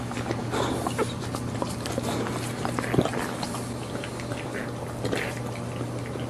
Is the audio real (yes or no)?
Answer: yes